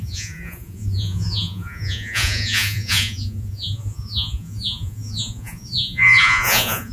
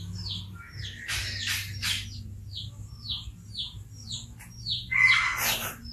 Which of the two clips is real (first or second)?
second